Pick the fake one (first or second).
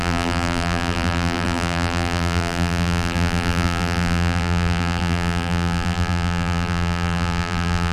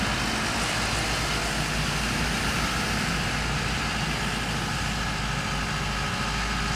first